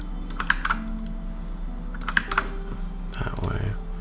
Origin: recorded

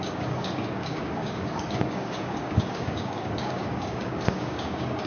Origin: remade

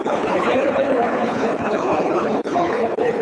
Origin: remade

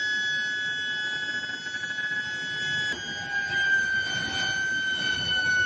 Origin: recorded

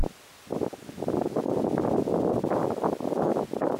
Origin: recorded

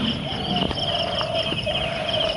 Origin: recorded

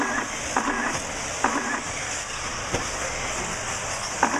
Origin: recorded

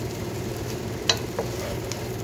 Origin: recorded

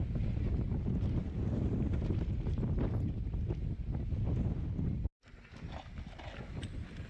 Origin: recorded